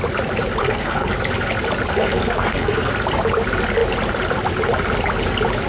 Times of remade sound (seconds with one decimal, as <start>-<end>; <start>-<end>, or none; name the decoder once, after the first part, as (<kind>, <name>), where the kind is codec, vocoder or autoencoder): 0.6-1.1 (codec, SNAC); 1.9-2.9